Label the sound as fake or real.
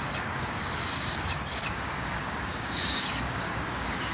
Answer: fake